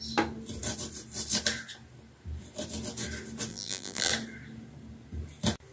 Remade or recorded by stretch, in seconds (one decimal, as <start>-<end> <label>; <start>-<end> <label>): 0.0-3.5 recorded; 3.5-4.1 remade; 4.1-5.7 recorded